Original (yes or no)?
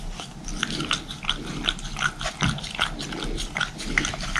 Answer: yes